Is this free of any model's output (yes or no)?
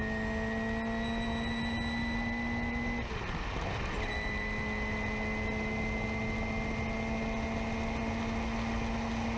yes